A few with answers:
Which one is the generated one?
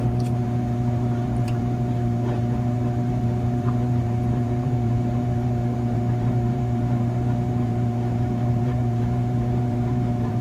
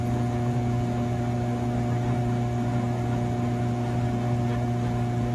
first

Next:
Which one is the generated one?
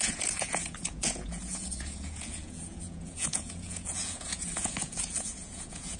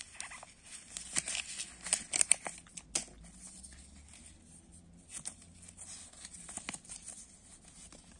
first